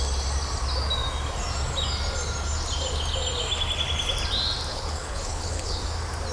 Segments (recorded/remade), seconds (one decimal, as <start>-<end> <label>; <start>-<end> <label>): 0.0-4.7 recorded; 4.7-5.8 remade; 5.8-6.3 recorded